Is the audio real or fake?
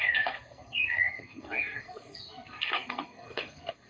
fake